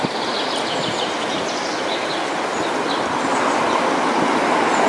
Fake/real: real